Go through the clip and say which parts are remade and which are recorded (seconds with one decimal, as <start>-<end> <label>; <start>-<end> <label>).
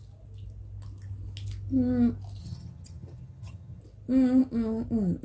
0.0-2.4 recorded; 2.4-3.8 remade; 3.8-5.2 recorded